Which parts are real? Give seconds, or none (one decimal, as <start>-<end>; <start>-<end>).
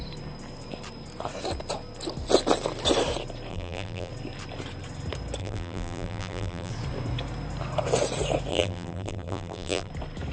0.0-3.5; 4.1-5.4; 6.7-8.5; 9.9-10.3